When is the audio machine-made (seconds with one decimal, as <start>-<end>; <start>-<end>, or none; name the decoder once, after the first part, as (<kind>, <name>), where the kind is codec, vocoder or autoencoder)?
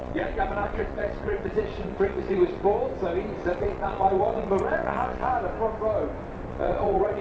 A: 0.0-2.7 (vocoder, Vocos); 3.4-5.3; 6.5-7.2